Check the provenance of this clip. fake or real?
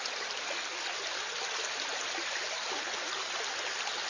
real